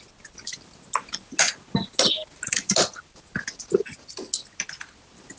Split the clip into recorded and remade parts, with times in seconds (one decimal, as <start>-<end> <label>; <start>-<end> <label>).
0.0-5.4 recorded

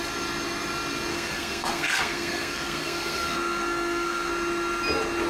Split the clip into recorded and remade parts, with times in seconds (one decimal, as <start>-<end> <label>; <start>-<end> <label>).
0.0-1.1 recorded; 1.1-4.3 remade; 4.3-5.3 recorded

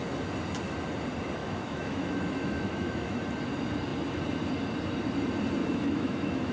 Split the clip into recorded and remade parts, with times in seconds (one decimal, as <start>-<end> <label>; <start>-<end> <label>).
0.0-1.4 recorded; 1.4-3.2 remade; 3.2-5.6 recorded; 5.6-6.5 remade

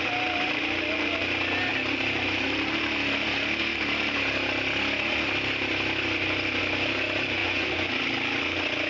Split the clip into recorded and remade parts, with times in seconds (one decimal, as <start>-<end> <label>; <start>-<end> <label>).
0.0-7.4 recorded; 7.4-7.9 remade; 7.9-8.9 recorded

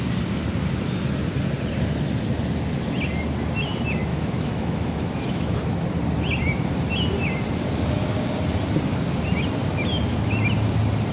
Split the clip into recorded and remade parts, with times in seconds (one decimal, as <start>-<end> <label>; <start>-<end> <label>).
0.0-4.1 recorded; 4.1-5.6 remade; 5.6-11.1 recorded

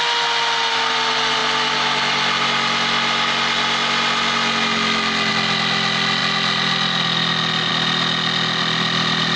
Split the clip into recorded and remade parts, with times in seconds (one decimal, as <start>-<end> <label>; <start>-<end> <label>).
0.0-9.4 recorded

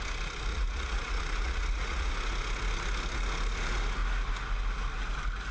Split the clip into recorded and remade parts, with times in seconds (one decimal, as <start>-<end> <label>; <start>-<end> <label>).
0.0-0.5 recorded; 0.5-2.1 remade; 2.1-5.5 recorded

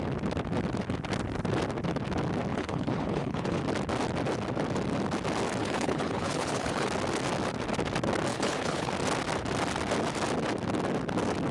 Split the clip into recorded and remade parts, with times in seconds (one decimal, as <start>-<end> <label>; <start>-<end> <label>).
0.0-2.5 recorded; 2.5-3.6 remade; 3.6-5.6 recorded; 5.6-6.9 remade; 6.9-8.3 recorded; 8.3-8.9 remade; 8.9-11.5 recorded